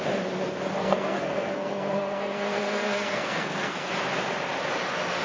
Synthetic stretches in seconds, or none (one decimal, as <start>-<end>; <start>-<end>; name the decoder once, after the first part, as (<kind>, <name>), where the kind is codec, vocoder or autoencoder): 0.8-3.9 (codec, SNAC)